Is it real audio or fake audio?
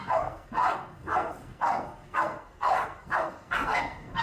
fake